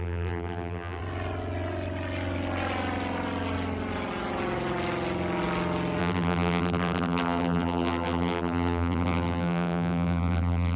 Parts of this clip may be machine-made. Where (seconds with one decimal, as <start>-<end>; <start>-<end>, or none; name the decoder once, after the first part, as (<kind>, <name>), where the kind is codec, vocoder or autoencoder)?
0.0-1.0 (vocoder, BigVGAN v2); 6.0-10.8

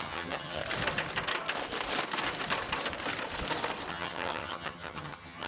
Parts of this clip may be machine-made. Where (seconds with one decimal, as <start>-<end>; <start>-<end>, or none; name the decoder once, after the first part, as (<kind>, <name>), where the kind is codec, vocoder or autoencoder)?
0.0-0.6 (vocoder, HiFi-GAN); 3.9-5.5

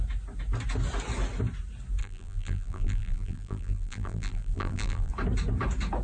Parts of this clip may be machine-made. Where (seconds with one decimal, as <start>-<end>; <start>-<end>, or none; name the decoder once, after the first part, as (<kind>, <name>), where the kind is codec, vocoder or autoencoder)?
2.0-5.1 (vocoder, BigVGAN v2)